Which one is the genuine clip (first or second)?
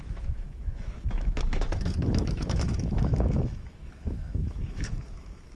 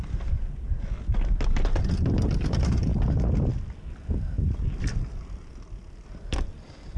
second